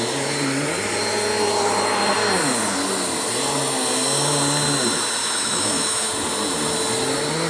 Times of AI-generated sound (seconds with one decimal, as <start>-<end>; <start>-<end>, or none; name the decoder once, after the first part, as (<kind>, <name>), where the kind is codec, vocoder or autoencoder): 5.2-6.1 (autoencoder, DAC-VAE)